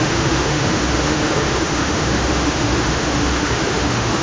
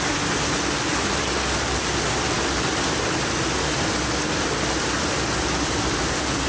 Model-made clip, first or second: first